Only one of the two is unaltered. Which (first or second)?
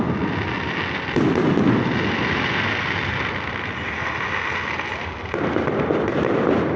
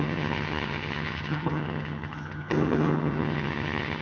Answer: first